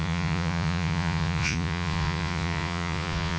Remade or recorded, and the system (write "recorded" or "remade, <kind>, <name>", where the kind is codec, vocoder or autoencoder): remade, vocoder, Vocos